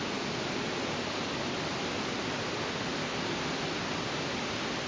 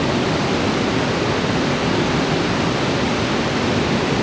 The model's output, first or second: second